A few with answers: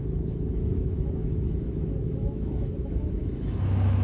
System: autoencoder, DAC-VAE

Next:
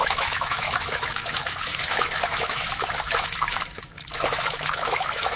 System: autoencoder, DAC-VAE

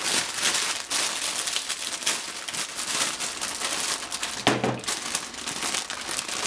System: none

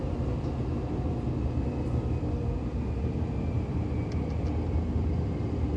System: none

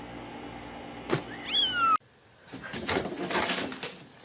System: none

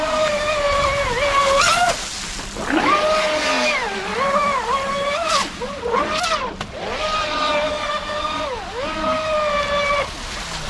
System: none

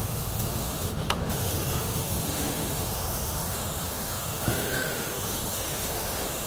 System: autoencoder, DAC-VAE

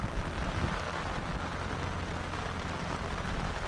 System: none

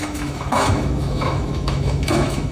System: autoencoder, DAC-VAE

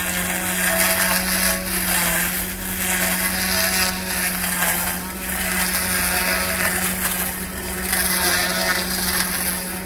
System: none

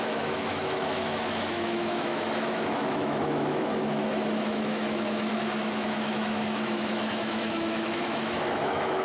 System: autoencoder, DAC-VAE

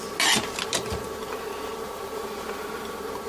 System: none